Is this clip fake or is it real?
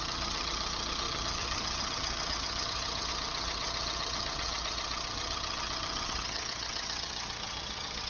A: fake